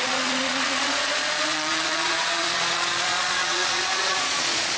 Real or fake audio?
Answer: fake